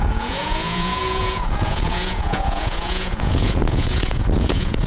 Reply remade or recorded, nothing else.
remade